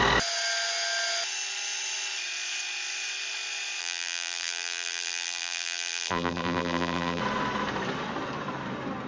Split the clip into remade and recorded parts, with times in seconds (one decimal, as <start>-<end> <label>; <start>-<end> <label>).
0.0-3.8 recorded; 3.8-7.2 remade; 7.2-9.1 recorded

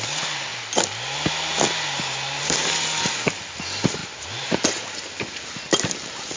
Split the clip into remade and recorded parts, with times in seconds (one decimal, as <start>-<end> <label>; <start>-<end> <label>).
0.0-0.5 remade; 0.5-2.4 recorded; 2.4-4.0 remade; 4.0-6.4 recorded

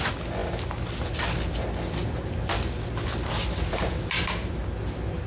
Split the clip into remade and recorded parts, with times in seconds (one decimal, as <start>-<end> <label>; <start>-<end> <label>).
0.0-5.3 recorded

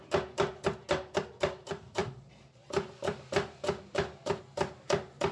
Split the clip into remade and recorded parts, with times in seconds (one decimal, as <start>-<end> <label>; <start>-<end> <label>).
0.0-0.5 remade; 0.5-1.1 recorded; 1.1-5.3 remade